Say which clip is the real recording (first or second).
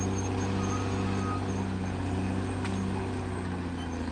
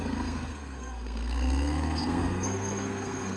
first